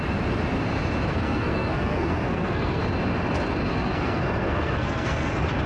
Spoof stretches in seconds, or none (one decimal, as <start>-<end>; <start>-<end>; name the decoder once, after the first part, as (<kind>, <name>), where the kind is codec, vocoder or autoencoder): 1.1-2.8 (codec, SNAC); 3.7-5.3

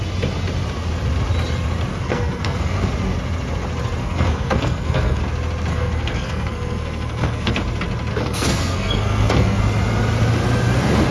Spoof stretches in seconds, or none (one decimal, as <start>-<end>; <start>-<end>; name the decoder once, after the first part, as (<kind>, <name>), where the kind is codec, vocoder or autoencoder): 1.9-2.9 (codec, SNAC); 4.0-5.2; 5.7-7.6; 8.1-9.6

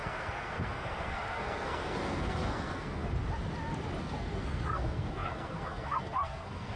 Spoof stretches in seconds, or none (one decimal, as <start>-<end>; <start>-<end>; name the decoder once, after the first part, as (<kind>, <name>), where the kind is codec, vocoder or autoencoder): 0.0-3.0 (codec, SNAC); 4.0-6.8

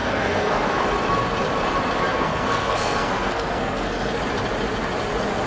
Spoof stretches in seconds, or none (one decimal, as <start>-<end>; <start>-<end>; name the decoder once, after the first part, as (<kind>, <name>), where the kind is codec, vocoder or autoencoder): 0.0-0.7 (codec, SNAC); 2.1-4.2

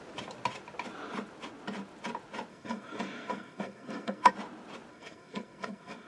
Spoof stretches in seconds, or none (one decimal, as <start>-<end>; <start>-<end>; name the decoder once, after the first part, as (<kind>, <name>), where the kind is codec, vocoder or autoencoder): 2.5-4.3 (codec, SNAC); 4.9-6.1

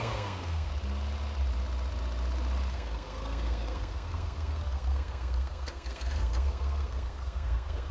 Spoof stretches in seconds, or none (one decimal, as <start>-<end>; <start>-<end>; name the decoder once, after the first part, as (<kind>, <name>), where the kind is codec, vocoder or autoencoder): 0.0-0.7 (codec, SNAC); 2.7-7.9

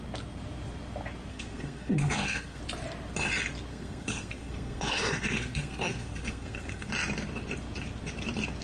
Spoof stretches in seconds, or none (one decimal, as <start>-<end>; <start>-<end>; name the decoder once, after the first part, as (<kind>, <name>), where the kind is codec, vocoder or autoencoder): 1.3-2.6 (codec, SNAC); 3.7-6.9

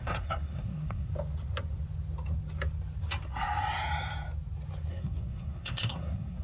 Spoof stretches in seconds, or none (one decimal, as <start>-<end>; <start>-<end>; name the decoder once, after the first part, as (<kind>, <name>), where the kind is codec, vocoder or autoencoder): 0.0-1.1 (codec, SNAC); 4.9-6.4